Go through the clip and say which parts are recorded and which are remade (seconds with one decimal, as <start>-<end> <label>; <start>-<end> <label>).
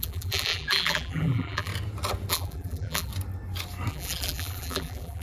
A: 0.0-1.7 remade; 1.7-2.3 recorded; 2.3-3.1 remade; 3.1-3.9 recorded; 3.9-5.2 remade